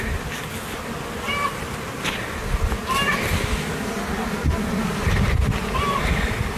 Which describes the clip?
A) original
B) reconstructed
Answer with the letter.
A